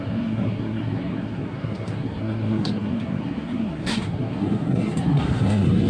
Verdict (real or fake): fake